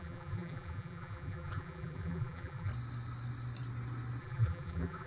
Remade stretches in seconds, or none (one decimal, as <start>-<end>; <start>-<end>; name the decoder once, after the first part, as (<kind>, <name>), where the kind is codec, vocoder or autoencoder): 0.0-2.7 (vocoder, BigVGAN v2); 4.2-5.1